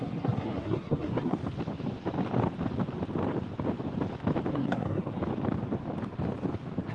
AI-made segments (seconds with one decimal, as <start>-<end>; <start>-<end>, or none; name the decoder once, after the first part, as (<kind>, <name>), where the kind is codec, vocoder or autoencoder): 0.0-1.4 (codec, SNAC); 4.5-5.2